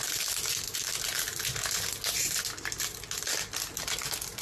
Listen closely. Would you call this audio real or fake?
real